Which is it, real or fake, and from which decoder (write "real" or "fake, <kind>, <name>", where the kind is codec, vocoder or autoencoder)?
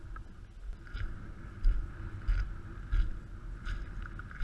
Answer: real